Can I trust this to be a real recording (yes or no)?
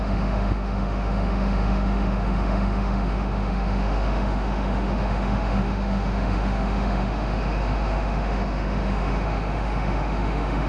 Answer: no